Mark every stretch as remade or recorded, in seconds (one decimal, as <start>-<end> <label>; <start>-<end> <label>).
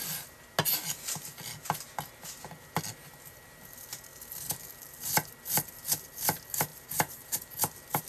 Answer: 0.0-6.7 recorded; 6.7-7.4 remade; 7.4-8.1 recorded